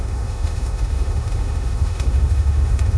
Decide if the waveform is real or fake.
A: fake